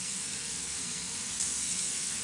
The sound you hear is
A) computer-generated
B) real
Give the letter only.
A